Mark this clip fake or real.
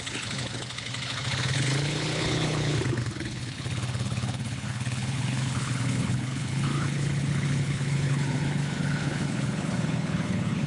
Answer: fake